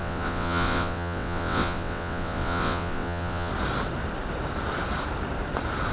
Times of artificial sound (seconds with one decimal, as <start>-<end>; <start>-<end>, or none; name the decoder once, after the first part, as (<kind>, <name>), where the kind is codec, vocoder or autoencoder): 0.0-3.5 (vocoder, WaveNeXt)